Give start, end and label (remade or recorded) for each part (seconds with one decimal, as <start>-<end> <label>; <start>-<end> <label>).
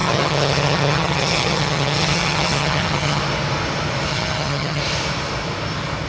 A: 0.0-3.2 remade; 3.2-4.1 recorded; 4.1-4.8 remade; 4.8-6.1 recorded